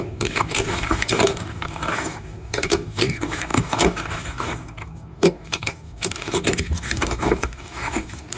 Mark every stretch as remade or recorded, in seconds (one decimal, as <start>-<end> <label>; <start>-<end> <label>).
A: 0.0-8.4 remade

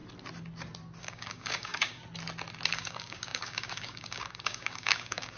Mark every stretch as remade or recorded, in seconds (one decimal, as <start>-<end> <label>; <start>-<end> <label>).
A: 0.0-1.0 recorded; 1.0-2.0 remade; 2.0-2.7 recorded; 2.7-5.4 remade

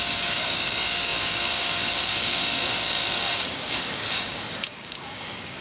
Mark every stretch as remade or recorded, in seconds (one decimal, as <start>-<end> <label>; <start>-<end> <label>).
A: 0.0-5.6 remade

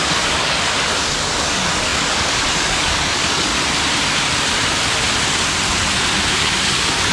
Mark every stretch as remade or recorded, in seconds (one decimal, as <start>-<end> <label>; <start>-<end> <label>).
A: 0.0-3.5 remade; 3.5-6.3 recorded; 6.3-7.1 remade

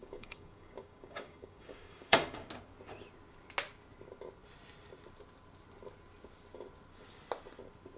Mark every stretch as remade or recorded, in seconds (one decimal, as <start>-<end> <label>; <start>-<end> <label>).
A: 0.0-2.5 remade; 2.5-8.0 recorded